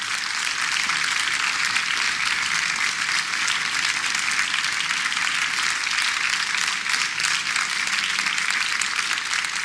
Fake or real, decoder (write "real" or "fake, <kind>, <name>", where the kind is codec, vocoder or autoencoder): real